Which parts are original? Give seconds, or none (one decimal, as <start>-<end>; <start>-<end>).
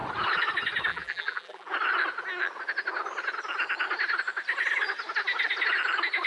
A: 0.0-0.9; 1.7-6.3